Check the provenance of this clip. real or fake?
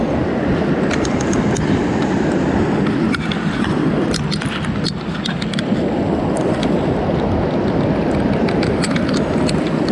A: real